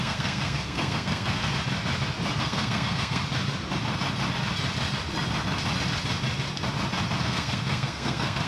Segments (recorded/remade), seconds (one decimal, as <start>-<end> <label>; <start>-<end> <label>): 0.0-1.4 remade; 1.4-2.4 recorded; 2.4-3.2 remade; 3.2-7.2 recorded; 7.2-8.5 remade